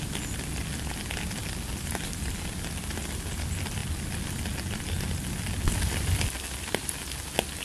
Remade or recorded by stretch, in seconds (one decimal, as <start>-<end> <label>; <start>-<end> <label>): 0.0-7.6 recorded